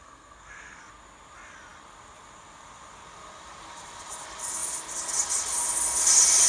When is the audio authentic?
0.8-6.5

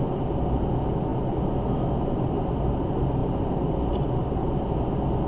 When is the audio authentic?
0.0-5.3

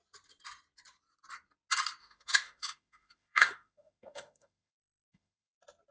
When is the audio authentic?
0.0-2.0; 5.5-5.9

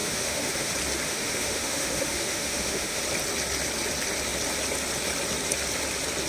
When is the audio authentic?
0.7-1.1; 3.0-6.3

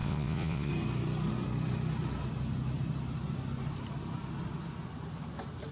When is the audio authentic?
0.7-5.7

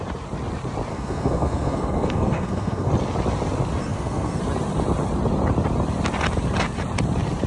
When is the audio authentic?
0.0-0.9; 2.9-3.8; 4.4-7.5

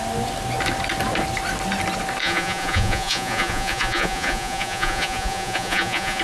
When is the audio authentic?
0.0-2.2